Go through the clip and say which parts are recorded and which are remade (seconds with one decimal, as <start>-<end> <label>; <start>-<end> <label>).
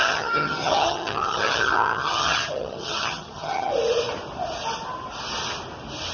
0.0-3.7 remade; 3.7-6.1 recorded